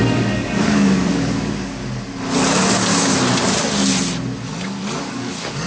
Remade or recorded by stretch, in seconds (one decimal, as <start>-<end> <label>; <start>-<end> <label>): 0.0-1.8 remade; 1.8-2.7 recorded; 2.7-3.1 remade; 3.1-5.0 recorded; 5.0-5.7 remade